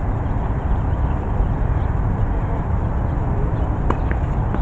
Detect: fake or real real